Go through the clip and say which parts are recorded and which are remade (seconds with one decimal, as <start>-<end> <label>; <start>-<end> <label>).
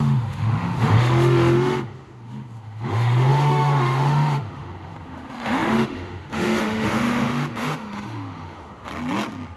0.0-8.9 remade; 8.9-9.6 recorded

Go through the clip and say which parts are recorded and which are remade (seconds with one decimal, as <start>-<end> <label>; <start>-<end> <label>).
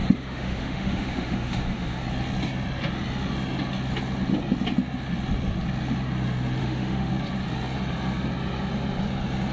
0.0-2.0 remade; 2.0-6.6 recorded; 6.6-7.1 remade; 7.1-9.5 recorded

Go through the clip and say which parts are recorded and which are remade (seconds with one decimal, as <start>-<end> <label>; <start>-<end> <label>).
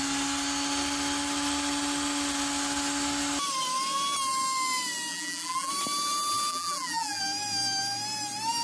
0.0-5.1 recorded; 5.1-5.7 remade; 5.7-6.5 recorded; 6.5-7.2 remade; 7.2-8.6 recorded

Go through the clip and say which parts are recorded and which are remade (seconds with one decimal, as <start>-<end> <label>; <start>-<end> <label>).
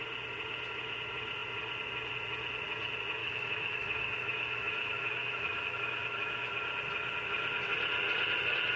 0.0-3.2 recorded; 3.2-6.5 remade; 6.5-8.8 recorded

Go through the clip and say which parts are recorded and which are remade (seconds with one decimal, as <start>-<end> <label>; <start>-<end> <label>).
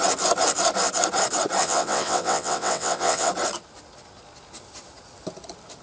0.0-1.6 recorded; 1.6-3.3 remade; 3.3-5.8 recorded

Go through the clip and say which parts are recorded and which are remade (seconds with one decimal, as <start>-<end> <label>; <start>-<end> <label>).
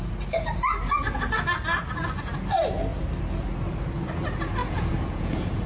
0.0-4.6 recorded; 4.6-5.7 remade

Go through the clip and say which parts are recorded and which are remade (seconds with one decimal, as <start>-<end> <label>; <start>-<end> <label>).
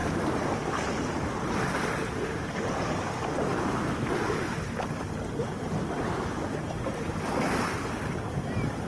0.0-8.9 recorded